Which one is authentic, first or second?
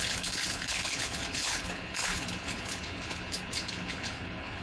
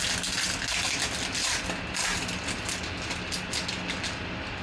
second